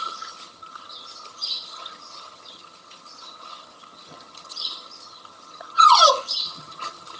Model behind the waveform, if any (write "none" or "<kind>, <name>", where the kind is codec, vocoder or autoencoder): vocoder, HiFi-GAN